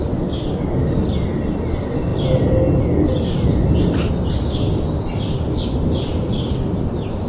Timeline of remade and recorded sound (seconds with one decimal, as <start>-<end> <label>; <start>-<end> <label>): 0.0-7.3 recorded